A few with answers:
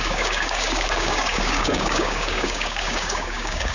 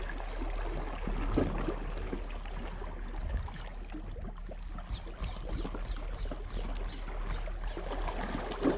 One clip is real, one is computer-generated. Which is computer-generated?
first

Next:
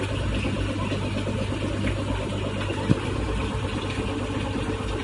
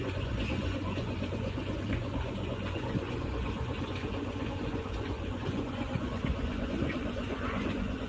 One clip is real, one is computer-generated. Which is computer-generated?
second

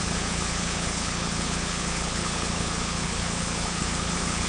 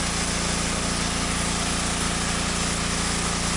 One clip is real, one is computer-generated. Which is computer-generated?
first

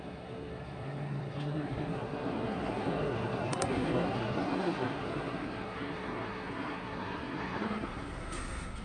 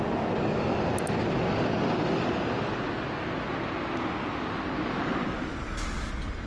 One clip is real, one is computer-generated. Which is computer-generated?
first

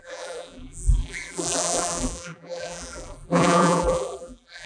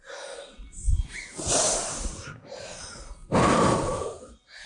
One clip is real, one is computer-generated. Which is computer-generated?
first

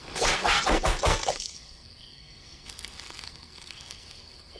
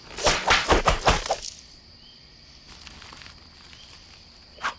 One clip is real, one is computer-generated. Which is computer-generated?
first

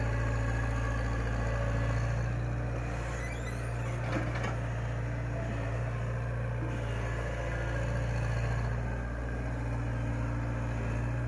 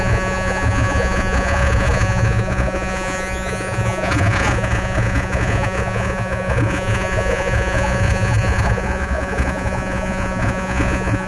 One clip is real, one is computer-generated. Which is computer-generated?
second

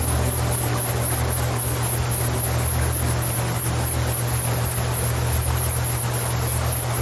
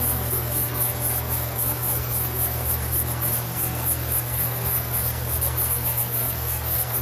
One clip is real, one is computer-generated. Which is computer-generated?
second